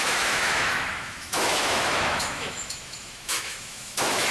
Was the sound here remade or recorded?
remade